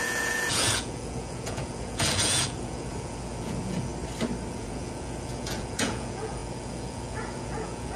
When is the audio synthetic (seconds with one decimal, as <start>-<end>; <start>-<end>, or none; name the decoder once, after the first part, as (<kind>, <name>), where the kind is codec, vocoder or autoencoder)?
0.0-3.9 (vocoder, Vocos); 4.5-8.0